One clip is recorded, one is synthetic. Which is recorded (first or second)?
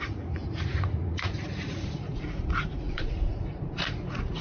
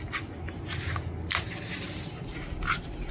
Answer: second